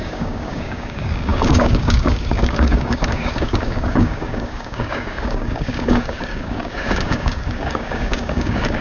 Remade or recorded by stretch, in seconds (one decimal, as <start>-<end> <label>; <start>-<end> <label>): 0.0-8.8 remade